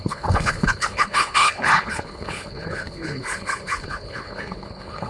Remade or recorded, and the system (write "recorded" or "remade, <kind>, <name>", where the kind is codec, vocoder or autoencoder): remade, codec, HILCodec